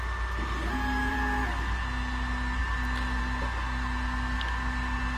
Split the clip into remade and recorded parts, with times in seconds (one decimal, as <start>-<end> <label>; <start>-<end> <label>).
0.0-1.1 recorded; 1.1-1.8 remade; 1.8-5.2 recorded